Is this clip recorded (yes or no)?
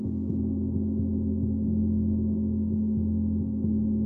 yes